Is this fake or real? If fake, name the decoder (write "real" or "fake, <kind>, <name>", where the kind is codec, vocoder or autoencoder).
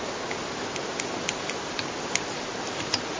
real